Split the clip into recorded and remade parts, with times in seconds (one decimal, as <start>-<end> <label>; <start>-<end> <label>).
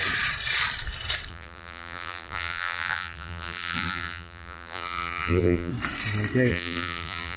0.0-1.3 recorded; 1.3-5.7 remade; 5.7-6.5 recorded; 6.5-7.4 remade